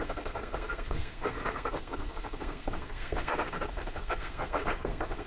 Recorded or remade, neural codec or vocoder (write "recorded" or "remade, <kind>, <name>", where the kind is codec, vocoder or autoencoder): remade, codec, SNAC